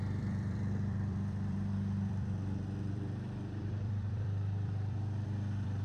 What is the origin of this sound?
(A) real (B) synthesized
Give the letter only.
B